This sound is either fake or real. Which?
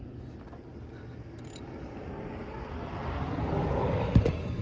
real